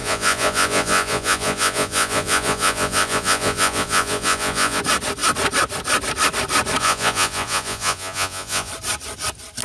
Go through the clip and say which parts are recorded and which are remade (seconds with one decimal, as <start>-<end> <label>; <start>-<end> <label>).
0.0-4.8 remade; 4.8-6.8 recorded; 6.8-8.7 remade; 8.7-9.6 recorded